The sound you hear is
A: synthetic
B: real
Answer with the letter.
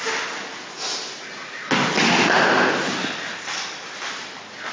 B